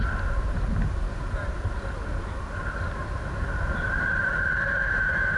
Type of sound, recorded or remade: recorded